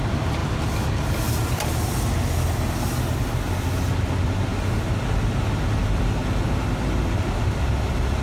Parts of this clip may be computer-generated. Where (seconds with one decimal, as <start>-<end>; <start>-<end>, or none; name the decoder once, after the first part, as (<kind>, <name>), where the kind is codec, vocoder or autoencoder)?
none